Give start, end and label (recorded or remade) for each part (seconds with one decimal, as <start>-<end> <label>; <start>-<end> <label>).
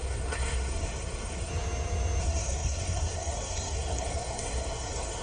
0.0-1.5 remade; 1.5-2.2 recorded; 2.2-5.2 remade